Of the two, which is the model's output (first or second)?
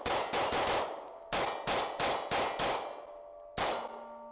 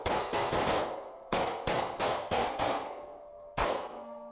second